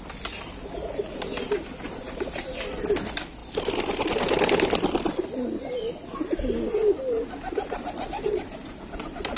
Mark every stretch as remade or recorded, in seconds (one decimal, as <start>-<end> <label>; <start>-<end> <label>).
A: 0.0-9.4 recorded

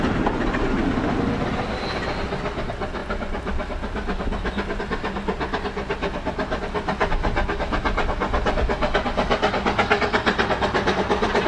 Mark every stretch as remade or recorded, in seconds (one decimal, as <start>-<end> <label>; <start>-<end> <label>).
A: 0.0-11.5 recorded

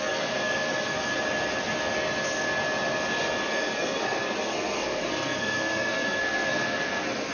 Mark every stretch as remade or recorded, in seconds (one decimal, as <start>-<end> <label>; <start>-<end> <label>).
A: 0.0-1.1 remade; 1.1-3.5 recorded; 3.5-7.3 remade

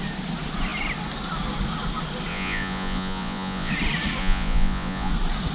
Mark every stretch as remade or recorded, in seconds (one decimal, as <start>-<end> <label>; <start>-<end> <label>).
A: 0.0-2.3 recorded; 2.3-3.7 remade; 3.7-4.2 recorded; 4.2-5.1 remade; 5.1-5.5 recorded

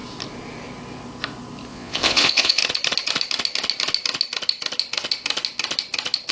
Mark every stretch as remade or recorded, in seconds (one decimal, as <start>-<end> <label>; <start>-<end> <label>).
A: 0.0-1.7 recorded; 1.7-2.6 remade; 2.6-6.3 recorded

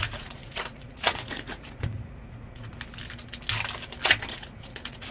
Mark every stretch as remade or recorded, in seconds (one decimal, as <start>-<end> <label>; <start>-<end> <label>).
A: 0.0-2.7 remade; 2.7-4.3 recorded; 4.3-5.1 remade

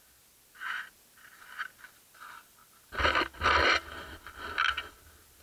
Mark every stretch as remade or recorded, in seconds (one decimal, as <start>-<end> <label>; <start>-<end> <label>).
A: 0.0-5.4 recorded